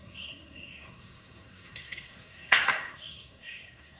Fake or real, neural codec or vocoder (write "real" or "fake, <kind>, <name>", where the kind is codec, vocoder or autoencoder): fake, codec, SNAC